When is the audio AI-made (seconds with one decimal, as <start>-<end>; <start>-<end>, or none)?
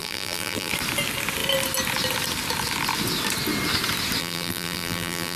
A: 0.0-0.7; 4.2-5.4